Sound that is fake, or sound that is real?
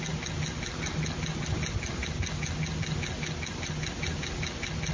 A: real